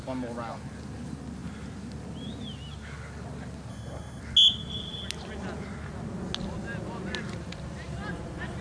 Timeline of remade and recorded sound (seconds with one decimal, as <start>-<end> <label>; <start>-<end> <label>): 0.0-3.7 recorded; 3.7-4.2 remade; 4.2-8.6 recorded